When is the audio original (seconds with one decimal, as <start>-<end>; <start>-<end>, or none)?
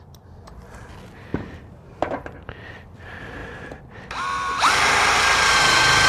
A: 0.0-6.1